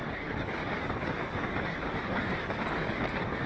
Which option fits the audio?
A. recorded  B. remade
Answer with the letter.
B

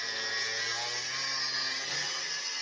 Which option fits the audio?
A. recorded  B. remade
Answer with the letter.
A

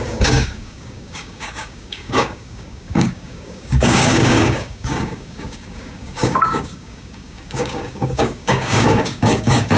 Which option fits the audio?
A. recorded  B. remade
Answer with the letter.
B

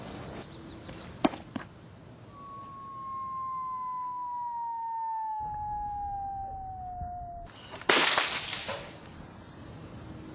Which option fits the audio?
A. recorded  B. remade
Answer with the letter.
A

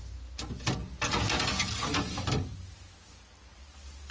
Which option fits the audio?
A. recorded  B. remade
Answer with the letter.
A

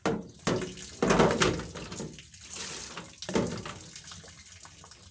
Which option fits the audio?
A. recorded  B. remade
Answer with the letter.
A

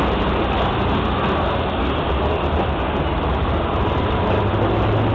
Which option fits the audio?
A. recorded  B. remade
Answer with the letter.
A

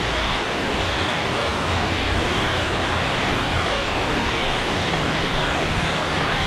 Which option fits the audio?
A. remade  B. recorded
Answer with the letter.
A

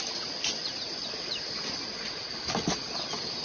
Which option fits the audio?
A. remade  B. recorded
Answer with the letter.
B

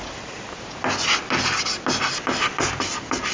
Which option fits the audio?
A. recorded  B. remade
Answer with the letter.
A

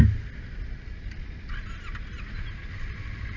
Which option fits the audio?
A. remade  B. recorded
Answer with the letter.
B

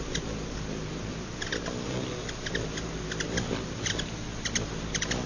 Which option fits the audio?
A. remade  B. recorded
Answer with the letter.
B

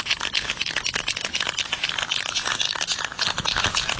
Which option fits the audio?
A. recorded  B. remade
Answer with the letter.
A